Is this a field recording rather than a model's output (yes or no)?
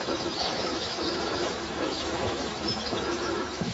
no